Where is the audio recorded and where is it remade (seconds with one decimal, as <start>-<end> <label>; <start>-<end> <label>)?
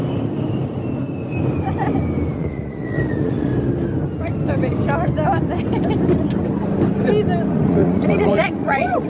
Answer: 0.0-2.3 recorded; 2.3-3.5 remade; 3.5-7.5 recorded; 7.5-9.1 remade